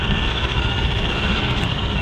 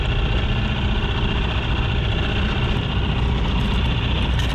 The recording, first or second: second